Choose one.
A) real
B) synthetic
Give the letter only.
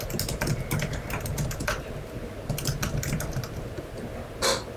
A